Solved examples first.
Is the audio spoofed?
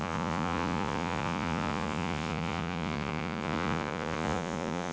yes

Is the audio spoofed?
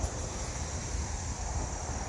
no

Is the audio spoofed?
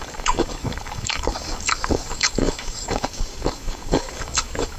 yes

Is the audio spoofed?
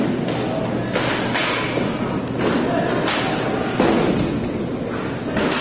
no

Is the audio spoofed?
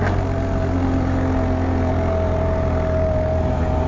no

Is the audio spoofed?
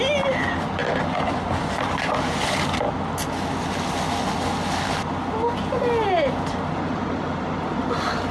no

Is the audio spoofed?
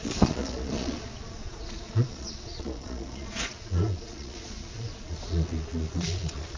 yes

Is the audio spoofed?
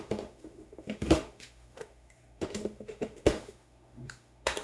yes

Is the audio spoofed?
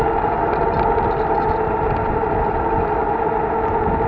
no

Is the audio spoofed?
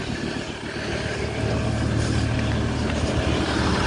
no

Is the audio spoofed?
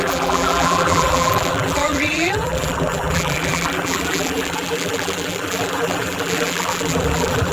yes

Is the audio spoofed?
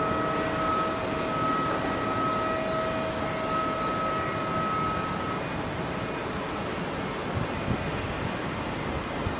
no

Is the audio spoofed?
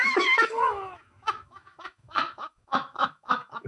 yes